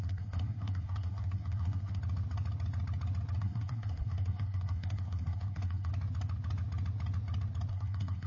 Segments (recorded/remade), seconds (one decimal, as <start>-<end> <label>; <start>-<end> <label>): 0.0-2.0 remade; 2.0-3.4 recorded; 3.4-5.9 remade; 5.9-7.7 recorded; 7.7-8.3 remade